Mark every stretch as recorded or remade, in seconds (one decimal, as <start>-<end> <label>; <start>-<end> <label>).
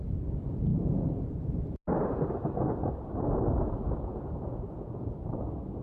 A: 0.0-0.7 recorded; 0.7-1.3 remade; 1.3-4.1 recorded; 4.1-5.1 remade; 5.1-5.8 recorded